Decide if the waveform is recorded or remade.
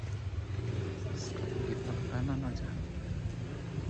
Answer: recorded